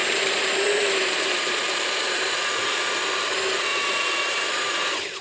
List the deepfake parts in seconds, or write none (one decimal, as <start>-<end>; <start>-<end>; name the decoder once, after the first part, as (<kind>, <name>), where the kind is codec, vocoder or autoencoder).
0.0-2.9 (vocoder, BigVGAN v2); 3.7-4.7